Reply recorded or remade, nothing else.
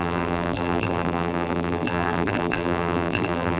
remade